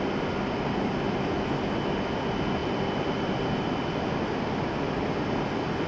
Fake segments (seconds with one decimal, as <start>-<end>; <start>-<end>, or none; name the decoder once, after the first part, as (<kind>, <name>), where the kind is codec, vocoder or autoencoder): 2.6-4.3 (vocoder, BigVGAN v2)